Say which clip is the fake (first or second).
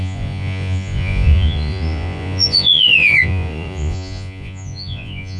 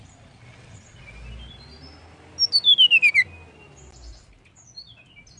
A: first